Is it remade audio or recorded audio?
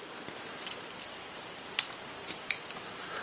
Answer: recorded